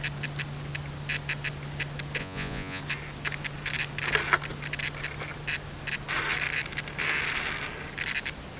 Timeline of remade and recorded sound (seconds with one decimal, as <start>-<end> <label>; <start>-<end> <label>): 0.0-2.2 recorded; 2.2-2.8 remade; 2.8-8.6 recorded